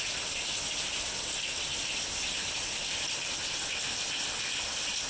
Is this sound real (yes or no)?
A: yes